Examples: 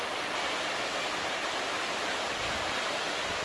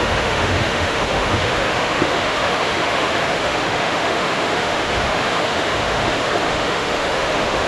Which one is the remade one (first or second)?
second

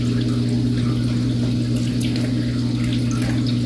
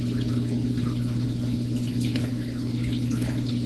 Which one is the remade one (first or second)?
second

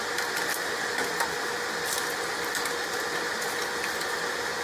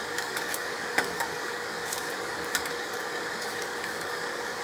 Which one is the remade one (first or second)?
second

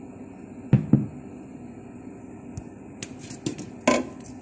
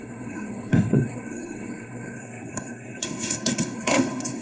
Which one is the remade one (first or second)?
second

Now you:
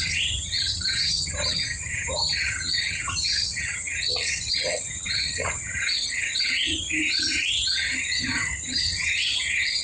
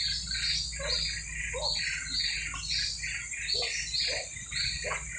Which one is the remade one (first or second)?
first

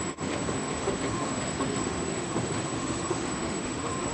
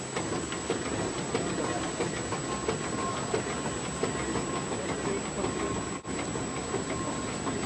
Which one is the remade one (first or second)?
first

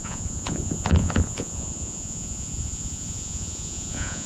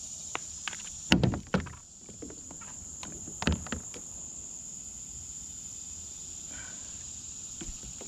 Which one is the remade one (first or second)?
first